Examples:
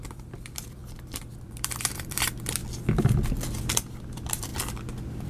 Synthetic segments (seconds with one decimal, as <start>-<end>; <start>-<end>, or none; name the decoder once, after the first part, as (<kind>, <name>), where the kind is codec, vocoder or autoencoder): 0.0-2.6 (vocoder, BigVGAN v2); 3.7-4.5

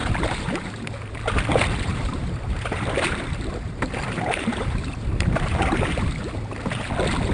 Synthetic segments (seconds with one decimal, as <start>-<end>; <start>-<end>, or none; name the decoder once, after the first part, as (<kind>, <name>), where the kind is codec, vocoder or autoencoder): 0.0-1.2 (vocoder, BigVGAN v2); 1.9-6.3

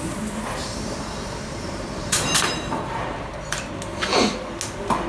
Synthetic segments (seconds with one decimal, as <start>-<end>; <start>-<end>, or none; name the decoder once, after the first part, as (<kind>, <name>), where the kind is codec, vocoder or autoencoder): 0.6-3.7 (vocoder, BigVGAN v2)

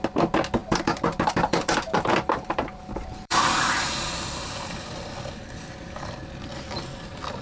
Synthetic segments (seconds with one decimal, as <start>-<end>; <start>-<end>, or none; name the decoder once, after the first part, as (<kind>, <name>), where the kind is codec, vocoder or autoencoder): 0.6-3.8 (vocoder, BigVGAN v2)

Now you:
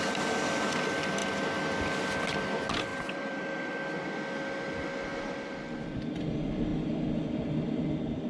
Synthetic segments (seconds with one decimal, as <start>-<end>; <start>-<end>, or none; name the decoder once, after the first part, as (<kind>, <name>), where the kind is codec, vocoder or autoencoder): 2.9-3.7 (vocoder, BigVGAN v2); 5.1-6.1

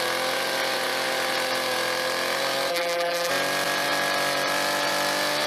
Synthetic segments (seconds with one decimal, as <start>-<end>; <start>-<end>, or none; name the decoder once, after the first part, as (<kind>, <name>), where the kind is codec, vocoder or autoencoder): 2.7-3.3 (vocoder, BigVGAN v2)

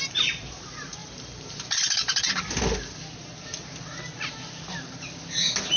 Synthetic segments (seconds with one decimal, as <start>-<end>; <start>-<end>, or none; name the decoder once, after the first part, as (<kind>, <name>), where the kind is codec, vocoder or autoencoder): 1.0-2.3 (vocoder, BigVGAN v2)

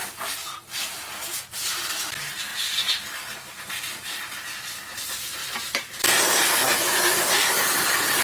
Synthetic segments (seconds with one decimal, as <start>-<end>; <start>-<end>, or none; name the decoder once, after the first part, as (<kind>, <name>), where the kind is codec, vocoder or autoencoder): 0.0-0.6 (vocoder, BigVGAN v2); 2.5-3.8; 5.4-6.0